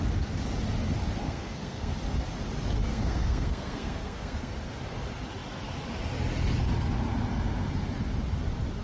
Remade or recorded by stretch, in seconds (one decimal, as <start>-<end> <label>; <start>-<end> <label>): 0.0-1.2 recorded; 1.2-1.9 remade; 1.9-2.9 recorded; 2.9-4.5 remade; 4.5-8.8 recorded